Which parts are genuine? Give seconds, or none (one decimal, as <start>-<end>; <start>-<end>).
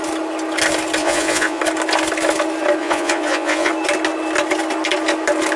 0.0-1.0; 1.6-2.8; 3.7-5.6